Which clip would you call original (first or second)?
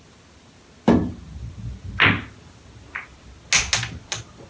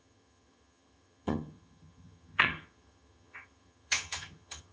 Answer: first